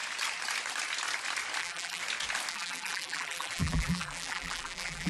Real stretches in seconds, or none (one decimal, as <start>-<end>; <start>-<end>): 0.0-1.6; 2.0-2.5

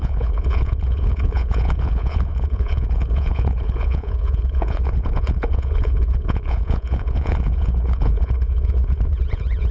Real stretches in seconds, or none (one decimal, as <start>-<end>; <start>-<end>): none

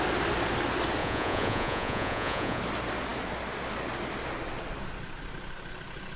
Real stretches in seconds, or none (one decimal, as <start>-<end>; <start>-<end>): 0.0-1.0; 2.6-6.2

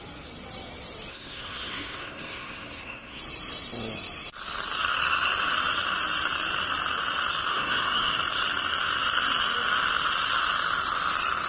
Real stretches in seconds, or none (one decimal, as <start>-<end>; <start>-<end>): 0.0-1.1; 3.2-7.5; 8.1-11.5

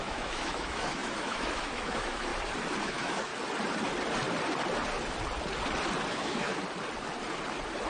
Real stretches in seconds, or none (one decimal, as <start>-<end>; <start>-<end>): 2.3-2.8; 3.3-6.1; 6.5-7.9

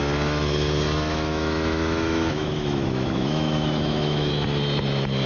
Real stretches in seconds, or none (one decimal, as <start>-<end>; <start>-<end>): 0.0-1.1; 4.3-5.3